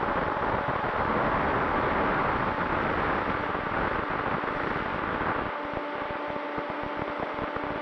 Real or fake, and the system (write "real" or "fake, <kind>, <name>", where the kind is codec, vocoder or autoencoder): real